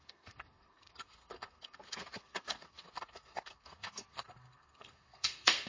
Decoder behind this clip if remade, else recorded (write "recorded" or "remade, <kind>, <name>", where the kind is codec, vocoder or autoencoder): remade, codec, SNAC